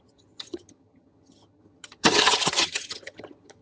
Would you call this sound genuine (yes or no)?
no